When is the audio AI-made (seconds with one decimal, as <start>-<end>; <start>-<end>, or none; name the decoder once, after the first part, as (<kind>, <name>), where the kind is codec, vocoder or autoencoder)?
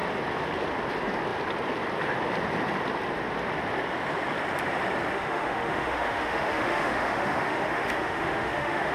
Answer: 5.1-8.9 (autoencoder, DAC-VAE)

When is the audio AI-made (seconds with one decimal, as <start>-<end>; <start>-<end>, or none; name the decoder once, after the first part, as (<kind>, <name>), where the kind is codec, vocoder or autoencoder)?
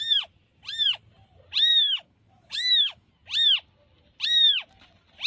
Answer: 1.7-3.1 (autoencoder, DAC-VAE)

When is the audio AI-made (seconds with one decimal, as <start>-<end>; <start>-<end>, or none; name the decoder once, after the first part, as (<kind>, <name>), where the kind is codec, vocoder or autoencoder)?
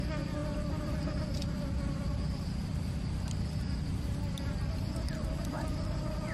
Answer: none